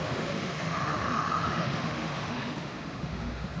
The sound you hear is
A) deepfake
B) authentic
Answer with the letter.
A